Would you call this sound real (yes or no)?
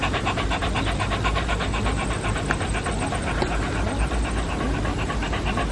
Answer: no